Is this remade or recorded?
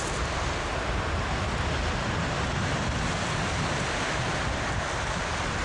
recorded